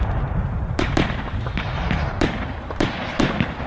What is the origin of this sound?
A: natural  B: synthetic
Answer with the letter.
B